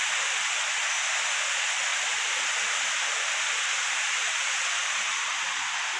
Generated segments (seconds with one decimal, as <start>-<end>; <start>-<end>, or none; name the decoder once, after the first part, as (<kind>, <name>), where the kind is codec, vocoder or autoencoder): 1.9-5.5 (vocoder, BigVGAN v2)